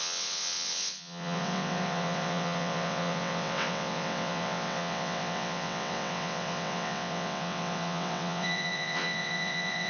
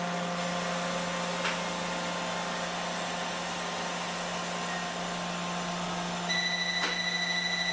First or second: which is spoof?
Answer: first